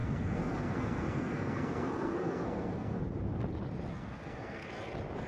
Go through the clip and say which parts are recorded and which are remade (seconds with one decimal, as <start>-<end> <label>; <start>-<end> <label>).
0.0-3.0 remade; 3.0-3.9 recorded; 3.9-4.7 remade; 4.7-5.3 recorded